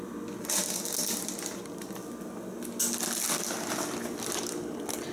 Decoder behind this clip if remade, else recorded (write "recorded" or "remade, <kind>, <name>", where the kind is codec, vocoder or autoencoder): recorded